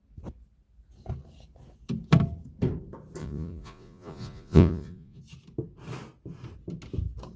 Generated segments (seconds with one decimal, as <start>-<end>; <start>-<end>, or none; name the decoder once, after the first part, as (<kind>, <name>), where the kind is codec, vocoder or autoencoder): 3.2-5.2 (vocoder, Vocos)